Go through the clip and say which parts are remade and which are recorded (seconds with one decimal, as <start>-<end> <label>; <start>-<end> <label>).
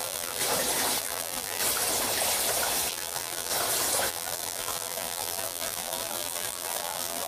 0.0-0.4 remade; 0.4-1.0 recorded; 1.0-1.6 remade; 1.6-2.9 recorded; 2.9-3.5 remade; 3.5-4.1 recorded; 4.1-7.3 remade